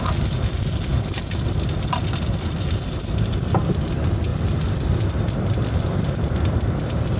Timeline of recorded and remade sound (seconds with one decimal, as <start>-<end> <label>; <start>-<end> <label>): 0.0-0.9 recorded; 0.9-2.2 remade; 2.2-4.3 recorded; 4.3-6.8 remade; 6.8-7.2 recorded